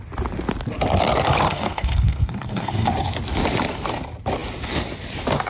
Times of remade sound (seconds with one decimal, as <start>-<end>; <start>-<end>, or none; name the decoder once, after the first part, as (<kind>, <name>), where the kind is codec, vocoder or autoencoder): 1.5-2.9 (codec, SNAC)